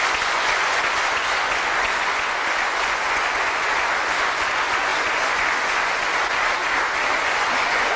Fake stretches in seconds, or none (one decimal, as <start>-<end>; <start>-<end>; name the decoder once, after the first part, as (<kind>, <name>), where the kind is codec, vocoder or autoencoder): 0.0-6.6 (vocoder, Vocos); 7.2-8.0